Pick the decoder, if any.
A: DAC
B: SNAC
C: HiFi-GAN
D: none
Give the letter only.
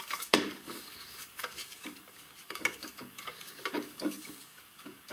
A